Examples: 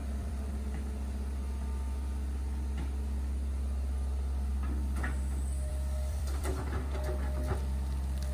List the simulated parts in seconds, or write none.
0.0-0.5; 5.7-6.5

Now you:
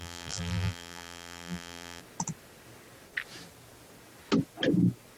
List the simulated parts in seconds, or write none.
0.0-2.0